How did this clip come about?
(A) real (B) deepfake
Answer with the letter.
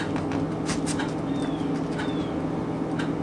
A